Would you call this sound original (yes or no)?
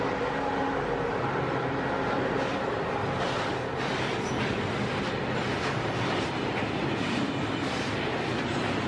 yes